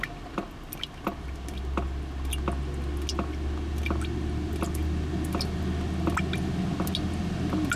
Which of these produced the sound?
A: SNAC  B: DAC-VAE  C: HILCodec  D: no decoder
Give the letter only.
D